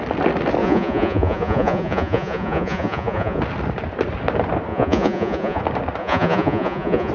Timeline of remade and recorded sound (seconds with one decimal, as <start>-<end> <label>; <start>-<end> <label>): 0.0-0.6 recorded; 0.6-3.4 remade; 3.4-4.7 recorded; 4.7-5.6 remade; 5.6-6.0 recorded; 6.0-7.1 remade